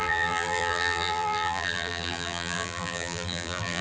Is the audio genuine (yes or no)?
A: no